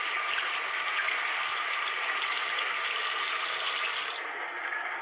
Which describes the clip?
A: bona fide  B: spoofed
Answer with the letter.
A